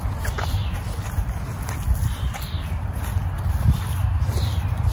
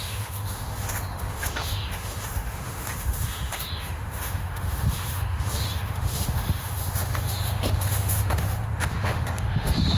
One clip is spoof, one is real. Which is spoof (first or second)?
second